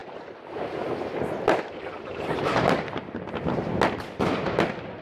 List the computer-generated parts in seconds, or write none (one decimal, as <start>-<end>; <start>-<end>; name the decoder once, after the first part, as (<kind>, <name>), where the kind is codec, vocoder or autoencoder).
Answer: none